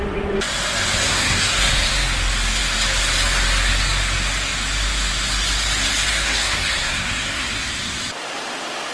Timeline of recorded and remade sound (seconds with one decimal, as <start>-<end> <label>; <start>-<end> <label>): 0.0-1.0 recorded; 1.0-1.7 remade; 1.7-6.1 recorded; 6.1-7.5 remade; 7.5-8.9 recorded